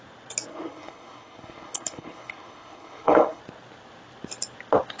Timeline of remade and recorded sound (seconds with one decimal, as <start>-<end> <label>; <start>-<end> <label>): 0.0-0.5 recorded; 0.5-3.4 remade; 3.4-5.0 recorded